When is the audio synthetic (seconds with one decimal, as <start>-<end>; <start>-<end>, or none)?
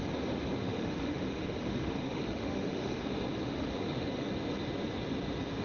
0.6-3.0; 3.4-4.1